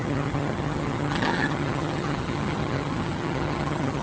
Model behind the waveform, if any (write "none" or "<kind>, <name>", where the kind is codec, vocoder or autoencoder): vocoder, HiFi-GAN